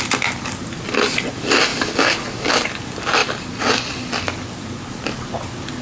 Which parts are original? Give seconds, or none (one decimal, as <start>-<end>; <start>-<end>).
0.0-5.8